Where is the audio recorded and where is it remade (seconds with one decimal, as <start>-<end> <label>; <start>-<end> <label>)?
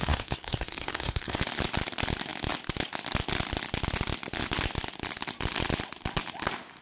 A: 0.0-1.4 remade; 1.4-6.8 recorded